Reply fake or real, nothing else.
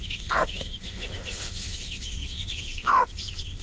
fake